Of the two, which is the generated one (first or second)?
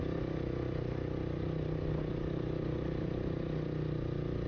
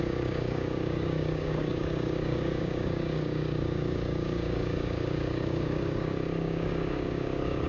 second